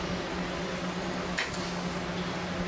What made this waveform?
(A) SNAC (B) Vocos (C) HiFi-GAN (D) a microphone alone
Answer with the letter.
D